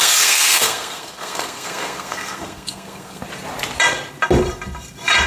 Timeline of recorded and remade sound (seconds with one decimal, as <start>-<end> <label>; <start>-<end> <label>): 0.0-3.2 remade; 3.2-5.3 recorded